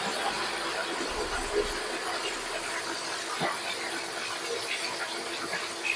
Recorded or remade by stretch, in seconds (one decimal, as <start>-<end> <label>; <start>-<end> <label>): 0.0-6.0 recorded